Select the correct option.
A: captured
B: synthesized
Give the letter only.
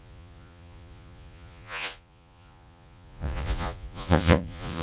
B